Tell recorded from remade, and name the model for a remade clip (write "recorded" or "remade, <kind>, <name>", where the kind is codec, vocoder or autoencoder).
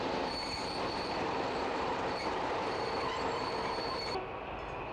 remade, vocoder, BigVGAN v2